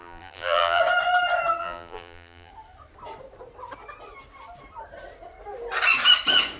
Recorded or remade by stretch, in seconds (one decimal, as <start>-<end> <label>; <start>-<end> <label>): 0.0-0.8 remade; 0.8-1.6 recorded; 1.6-2.5 remade; 2.5-6.6 recorded